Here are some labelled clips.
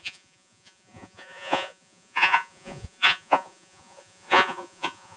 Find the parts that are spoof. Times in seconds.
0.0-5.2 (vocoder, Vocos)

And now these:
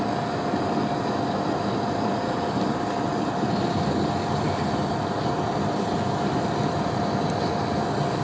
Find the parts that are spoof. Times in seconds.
none